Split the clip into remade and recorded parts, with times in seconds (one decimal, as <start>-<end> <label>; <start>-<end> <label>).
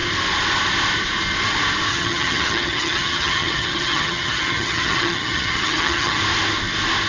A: 0.0-1.9 recorded; 1.9-6.2 remade; 6.2-7.1 recorded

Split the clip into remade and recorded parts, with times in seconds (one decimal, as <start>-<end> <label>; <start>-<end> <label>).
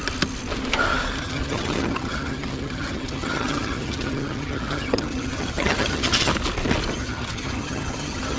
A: 0.0-1.2 recorded; 1.2-6.3 remade; 6.3-6.9 recorded; 6.9-8.4 remade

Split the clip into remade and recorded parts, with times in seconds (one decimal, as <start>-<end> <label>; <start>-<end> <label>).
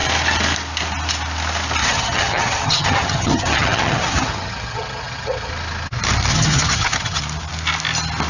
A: 0.0-1.8 recorded; 1.8-5.5 remade; 5.5-6.3 recorded; 6.3-7.2 remade; 7.2-8.3 recorded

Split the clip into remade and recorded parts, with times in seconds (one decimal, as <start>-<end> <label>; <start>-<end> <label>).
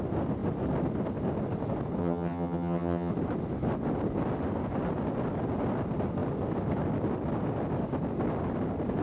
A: 0.0-2.0 recorded; 2.0-3.1 remade; 3.1-9.0 recorded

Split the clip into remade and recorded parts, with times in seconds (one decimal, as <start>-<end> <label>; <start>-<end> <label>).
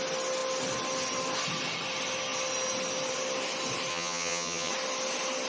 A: 0.0-3.9 recorded; 3.9-4.7 remade; 4.7-5.5 recorded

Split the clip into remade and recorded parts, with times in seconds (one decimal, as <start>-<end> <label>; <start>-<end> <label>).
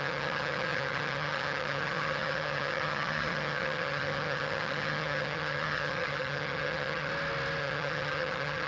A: 0.0-7.1 remade; 7.1-7.6 recorded; 7.6-8.7 remade